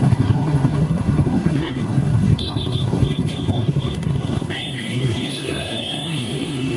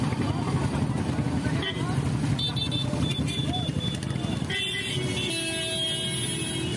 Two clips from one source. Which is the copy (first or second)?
first